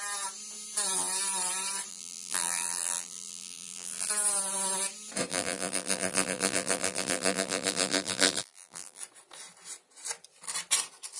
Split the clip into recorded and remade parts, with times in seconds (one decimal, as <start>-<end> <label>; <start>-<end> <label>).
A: 0.0-1.9 recorded; 1.9-4.1 remade; 4.1-5.3 recorded; 5.3-9.0 remade; 9.0-11.2 recorded